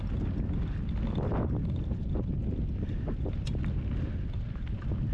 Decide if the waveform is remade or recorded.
recorded